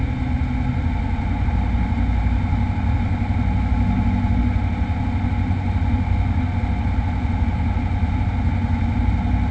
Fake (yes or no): no